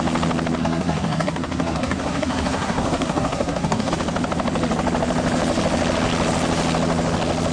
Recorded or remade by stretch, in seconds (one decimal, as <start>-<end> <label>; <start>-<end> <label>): 0.0-0.6 recorded; 0.6-3.9 remade; 3.9-7.5 recorded